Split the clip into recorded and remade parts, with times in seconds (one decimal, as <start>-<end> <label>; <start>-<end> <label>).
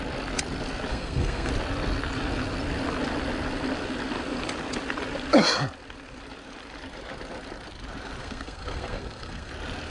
0.0-0.9 recorded; 0.9-1.5 remade; 1.5-8.2 recorded; 8.2-9.5 remade; 9.5-9.9 recorded